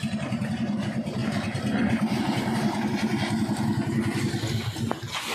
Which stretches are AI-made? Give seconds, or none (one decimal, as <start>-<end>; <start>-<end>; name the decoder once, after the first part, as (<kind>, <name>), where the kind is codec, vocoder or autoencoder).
0.0-3.1 (vocoder, BigVGAN v2)